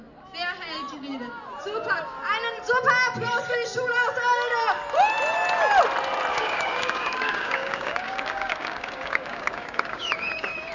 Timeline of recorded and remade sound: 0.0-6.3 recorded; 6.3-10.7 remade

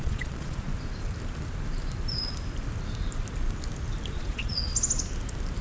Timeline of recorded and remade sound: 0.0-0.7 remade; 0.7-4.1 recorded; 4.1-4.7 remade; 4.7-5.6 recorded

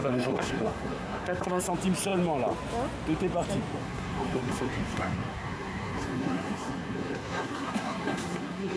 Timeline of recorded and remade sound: 0.0-1.6 remade; 1.6-3.8 recorded; 3.8-8.8 remade

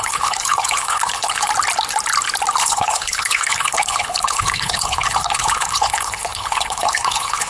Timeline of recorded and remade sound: 0.0-1.5 remade; 1.5-2.6 recorded; 2.6-7.5 remade